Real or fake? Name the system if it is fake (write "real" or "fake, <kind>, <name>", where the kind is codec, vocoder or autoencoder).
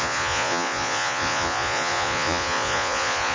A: fake, vocoder, Vocos